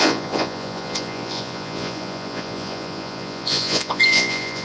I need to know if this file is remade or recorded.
remade